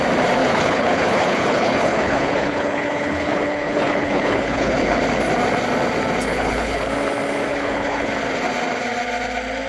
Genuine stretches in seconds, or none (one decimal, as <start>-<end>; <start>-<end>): 0.0-0.4; 5.0-6.3; 6.9-7.5; 8.1-9.7